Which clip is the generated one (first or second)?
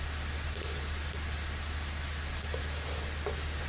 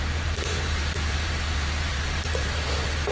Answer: second